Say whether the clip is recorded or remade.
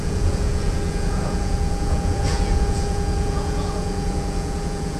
remade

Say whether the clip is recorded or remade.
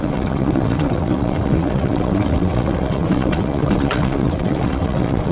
remade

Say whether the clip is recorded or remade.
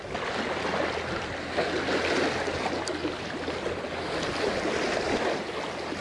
recorded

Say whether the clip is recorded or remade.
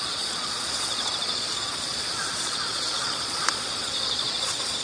remade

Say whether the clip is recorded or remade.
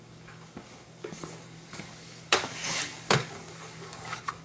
remade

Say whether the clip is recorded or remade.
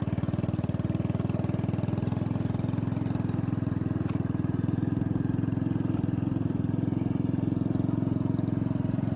recorded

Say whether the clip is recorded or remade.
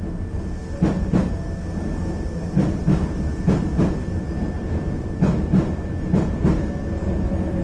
recorded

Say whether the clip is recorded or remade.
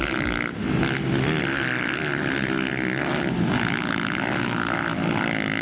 recorded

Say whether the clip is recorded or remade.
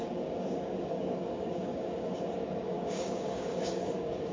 remade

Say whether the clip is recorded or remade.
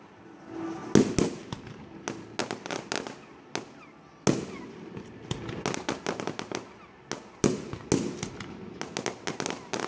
recorded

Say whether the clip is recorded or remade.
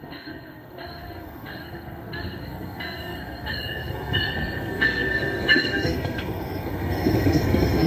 remade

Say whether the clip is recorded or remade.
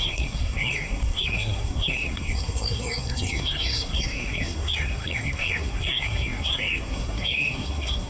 remade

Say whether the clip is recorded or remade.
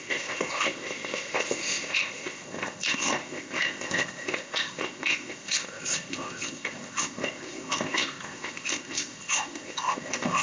remade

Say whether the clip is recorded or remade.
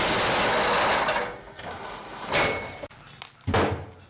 recorded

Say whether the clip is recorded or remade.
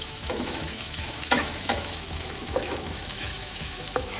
remade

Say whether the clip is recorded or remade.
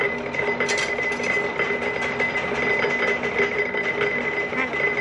recorded